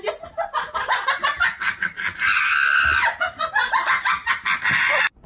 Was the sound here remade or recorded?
recorded